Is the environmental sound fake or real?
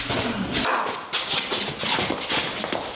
real